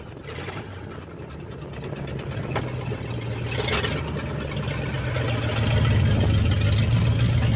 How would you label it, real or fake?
real